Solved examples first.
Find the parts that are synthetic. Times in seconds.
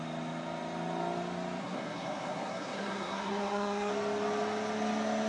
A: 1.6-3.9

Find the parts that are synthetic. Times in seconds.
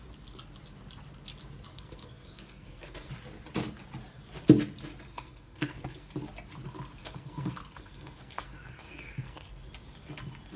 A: 1.7-3.1; 5.1-6.1; 7.0-9.7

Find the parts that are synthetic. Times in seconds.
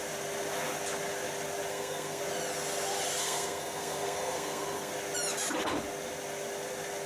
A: 1.7-2.2; 3.2-4.9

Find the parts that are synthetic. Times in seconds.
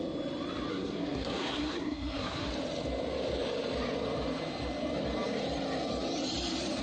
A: 0.7-2.5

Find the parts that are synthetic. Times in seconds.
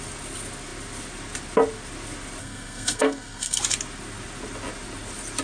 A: 2.4-3.6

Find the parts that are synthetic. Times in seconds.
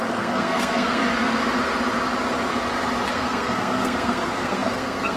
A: 0.0-1.0; 3.1-5.2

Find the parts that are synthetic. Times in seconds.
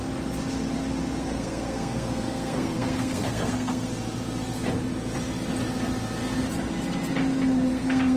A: 1.2-3.9; 7.7-8.2